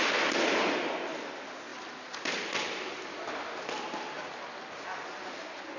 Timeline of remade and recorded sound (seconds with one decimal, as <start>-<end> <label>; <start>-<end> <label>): 0.0-1.7 recorded; 1.7-4.3 remade; 4.3-5.8 recorded